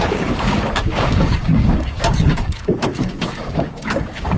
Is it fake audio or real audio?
fake